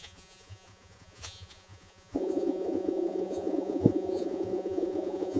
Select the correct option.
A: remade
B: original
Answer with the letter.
A